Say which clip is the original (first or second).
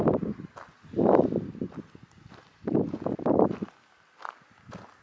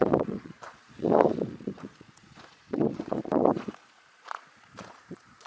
first